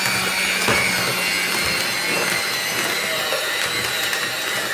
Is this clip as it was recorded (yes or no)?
yes